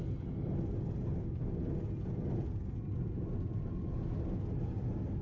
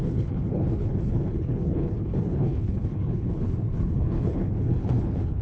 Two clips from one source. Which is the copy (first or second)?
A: second